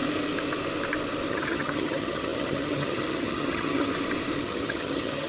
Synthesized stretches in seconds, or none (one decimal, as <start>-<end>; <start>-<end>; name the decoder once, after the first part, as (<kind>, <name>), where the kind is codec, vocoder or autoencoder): 1.3-3.9 (vocoder, HiFi-GAN); 4.4-5.3